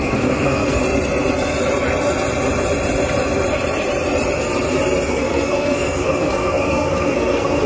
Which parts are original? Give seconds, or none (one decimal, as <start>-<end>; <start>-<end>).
0.8-5.1